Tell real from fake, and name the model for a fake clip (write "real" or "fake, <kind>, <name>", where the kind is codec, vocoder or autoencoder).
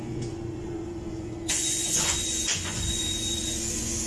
fake, vocoder, Vocos